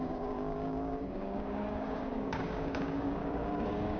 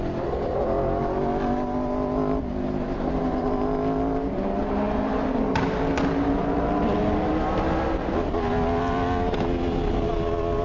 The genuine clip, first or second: second